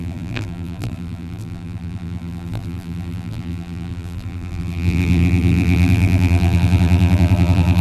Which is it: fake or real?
fake